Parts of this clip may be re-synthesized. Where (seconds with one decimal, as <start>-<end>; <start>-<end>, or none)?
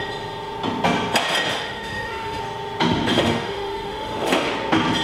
1.5-2.4; 3.1-4.5